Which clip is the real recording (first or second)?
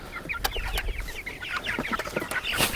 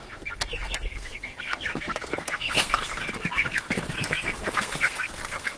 first